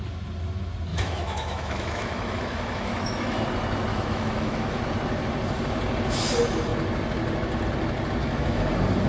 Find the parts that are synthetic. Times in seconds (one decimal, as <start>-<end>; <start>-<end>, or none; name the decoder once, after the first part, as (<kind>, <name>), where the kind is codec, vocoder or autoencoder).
0.9-3.4 (autoencoder, DAC-VAE); 3.9-4.8; 8.2-8.7